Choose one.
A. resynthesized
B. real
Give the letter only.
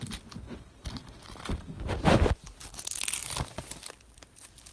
A